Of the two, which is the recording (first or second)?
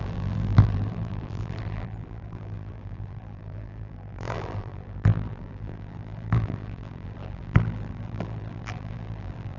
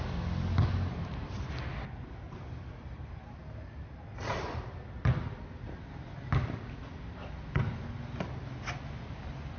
second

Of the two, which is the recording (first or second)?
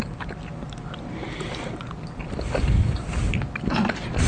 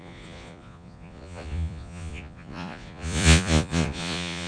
first